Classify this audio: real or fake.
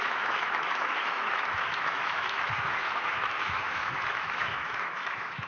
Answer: fake